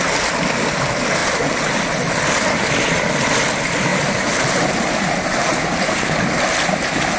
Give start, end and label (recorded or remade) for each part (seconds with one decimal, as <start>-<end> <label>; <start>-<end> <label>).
0.0-3.9 recorded; 3.9-5.9 remade; 5.9-7.2 recorded